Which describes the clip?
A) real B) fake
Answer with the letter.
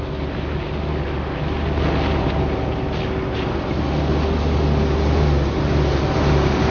A